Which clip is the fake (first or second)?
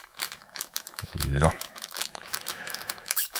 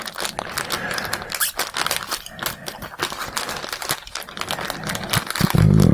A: first